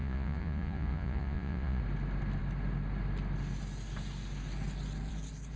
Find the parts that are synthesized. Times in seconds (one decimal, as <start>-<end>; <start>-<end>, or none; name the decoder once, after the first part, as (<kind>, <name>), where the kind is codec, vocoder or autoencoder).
0.0-1.8 (vocoder, Vocos)

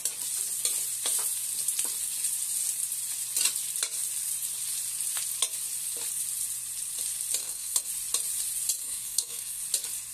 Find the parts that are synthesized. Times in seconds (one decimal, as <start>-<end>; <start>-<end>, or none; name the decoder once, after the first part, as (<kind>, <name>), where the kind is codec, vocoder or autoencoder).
7.4-7.9 (codec, SNAC); 8.8-9.6

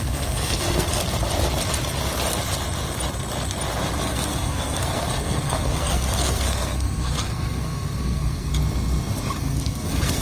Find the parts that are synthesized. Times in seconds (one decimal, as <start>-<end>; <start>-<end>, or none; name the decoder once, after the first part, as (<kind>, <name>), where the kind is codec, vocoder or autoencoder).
0.0-1.0 (codec, SNAC); 4.0-8.5; 9.4-10.2

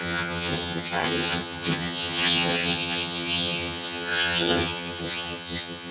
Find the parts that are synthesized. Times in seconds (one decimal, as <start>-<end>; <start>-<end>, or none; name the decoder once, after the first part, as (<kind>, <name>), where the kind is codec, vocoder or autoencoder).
0.0-5.9 (vocoder, HiFi-GAN)

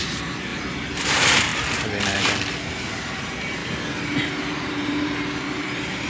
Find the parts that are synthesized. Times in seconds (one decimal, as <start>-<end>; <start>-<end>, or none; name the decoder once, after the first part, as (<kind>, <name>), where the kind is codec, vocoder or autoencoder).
0.0-1.5 (vocoder, BigVGAN v2); 3.2-3.6; 4.3-6.1

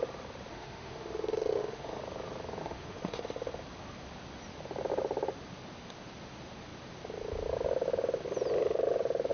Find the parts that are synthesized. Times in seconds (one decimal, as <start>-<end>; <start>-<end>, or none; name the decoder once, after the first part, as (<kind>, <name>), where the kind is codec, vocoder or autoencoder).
0.5-2.0 (autoencoder, DAC-VAE); 2.6-3.5

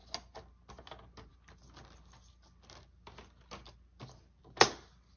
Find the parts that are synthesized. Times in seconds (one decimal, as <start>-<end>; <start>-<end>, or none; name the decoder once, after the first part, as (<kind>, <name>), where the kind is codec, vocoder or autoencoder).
none

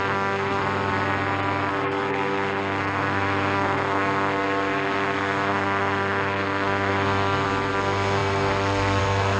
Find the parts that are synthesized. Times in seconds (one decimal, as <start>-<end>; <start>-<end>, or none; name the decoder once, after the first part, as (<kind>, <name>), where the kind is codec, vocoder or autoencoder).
0.0-0.6 (codec, SNAC); 1.7-9.4